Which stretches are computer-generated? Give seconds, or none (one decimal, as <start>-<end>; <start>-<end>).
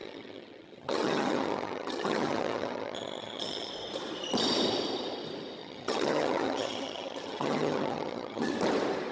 0.0-3.7; 5.6-8.5